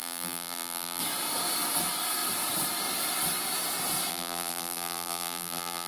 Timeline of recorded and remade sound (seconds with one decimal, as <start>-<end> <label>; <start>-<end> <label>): 0.0-1.0 remade; 1.0-4.1 recorded; 4.1-5.9 remade

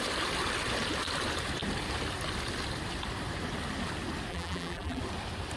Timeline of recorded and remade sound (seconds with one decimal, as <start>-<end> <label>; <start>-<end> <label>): 0.0-4.3 recorded; 4.3-5.0 remade; 5.0-5.6 recorded